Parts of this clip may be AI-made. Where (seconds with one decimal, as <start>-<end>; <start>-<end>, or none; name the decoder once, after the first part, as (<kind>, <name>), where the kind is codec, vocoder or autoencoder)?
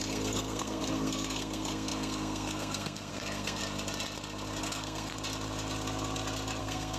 0.0-3.6 (codec, SNAC); 4.6-5.1; 6.6-7.0